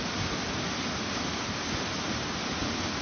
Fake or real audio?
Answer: real